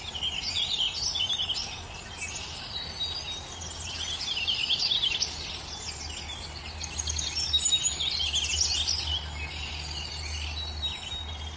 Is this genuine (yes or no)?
yes